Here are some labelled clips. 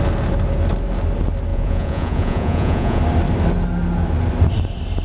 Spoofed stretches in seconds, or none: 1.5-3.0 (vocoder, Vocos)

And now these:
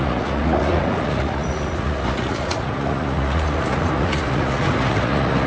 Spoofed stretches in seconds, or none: 0.0-5.5 (vocoder, Vocos)

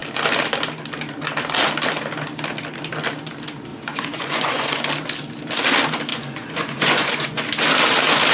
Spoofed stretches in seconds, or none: 3.7-4.8 (vocoder, Vocos); 6.1-7.4

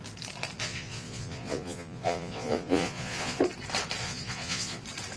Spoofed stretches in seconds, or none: 0.6-3.4 (vocoder, Vocos); 4.0-4.8

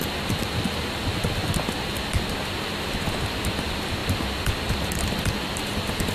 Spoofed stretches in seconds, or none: none